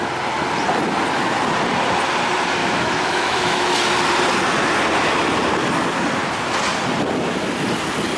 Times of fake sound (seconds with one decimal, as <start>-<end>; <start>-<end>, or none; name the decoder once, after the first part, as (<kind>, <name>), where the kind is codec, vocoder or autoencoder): 2.6-3.7 (autoencoder, DAC-VAE)